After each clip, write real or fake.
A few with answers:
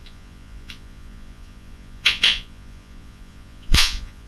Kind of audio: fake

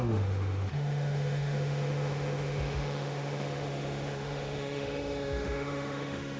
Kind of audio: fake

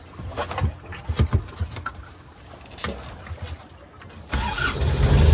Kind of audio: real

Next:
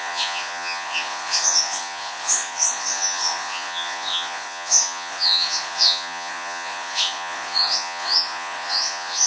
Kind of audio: fake